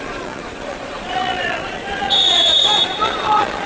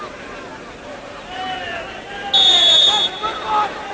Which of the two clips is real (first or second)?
second